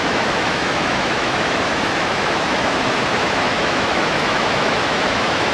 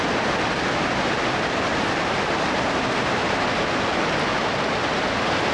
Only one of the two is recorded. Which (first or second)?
second